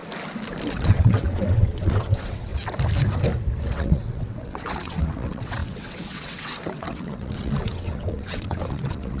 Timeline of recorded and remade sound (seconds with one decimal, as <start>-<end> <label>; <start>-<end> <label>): 0.0-0.7 recorded; 0.7-2.5 remade; 2.5-3.7 recorded; 3.7-9.2 remade